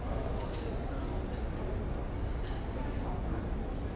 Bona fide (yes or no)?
yes